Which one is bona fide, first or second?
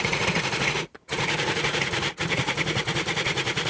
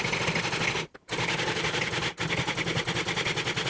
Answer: second